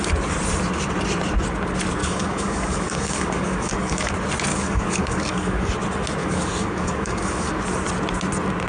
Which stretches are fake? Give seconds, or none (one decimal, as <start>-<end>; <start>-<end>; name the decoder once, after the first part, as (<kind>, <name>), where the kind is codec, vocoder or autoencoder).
2.0-4.1 (codec, DAC); 4.5-5.7; 6.2-7.6